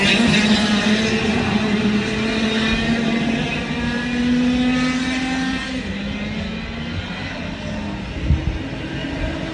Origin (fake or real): real